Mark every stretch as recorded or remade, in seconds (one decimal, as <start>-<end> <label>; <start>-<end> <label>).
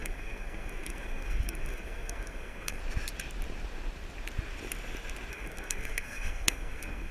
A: 0.0-2.8 remade; 2.8-5.3 recorded; 5.3-7.1 remade